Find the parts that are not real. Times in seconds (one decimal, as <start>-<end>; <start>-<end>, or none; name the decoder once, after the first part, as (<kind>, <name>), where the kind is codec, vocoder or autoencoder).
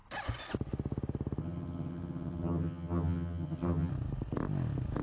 1.4-3.9 (vocoder, HiFi-GAN)